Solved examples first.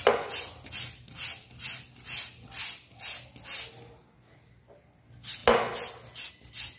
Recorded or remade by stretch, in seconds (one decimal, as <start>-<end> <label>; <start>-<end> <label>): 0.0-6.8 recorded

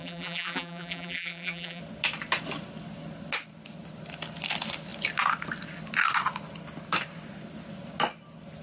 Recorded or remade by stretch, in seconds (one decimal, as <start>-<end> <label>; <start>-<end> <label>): 0.0-1.8 remade; 1.8-8.6 recorded

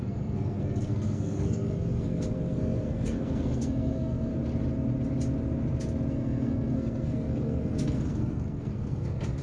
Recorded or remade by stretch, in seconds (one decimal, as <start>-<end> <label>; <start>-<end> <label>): 0.0-4.3 remade; 4.3-6.1 recorded; 6.1-9.4 remade

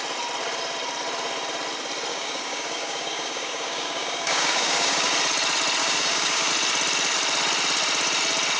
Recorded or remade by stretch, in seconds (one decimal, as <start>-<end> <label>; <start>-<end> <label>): 0.0-2.1 recorded; 2.1-5.1 remade; 5.1-5.8 recorded; 5.8-6.5 remade; 6.5-8.6 recorded